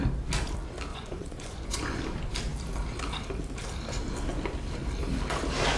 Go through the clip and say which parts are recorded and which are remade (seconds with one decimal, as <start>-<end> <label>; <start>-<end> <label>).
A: 0.0-0.9 recorded; 0.9-2.0 remade; 2.0-5.8 recorded